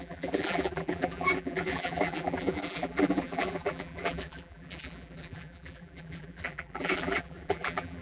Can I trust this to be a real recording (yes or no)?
no